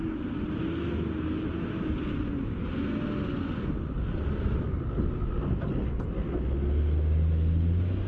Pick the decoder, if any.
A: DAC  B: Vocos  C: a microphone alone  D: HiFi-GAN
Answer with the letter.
C